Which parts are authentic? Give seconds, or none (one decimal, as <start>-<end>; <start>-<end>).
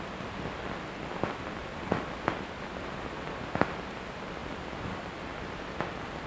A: 0.0-6.3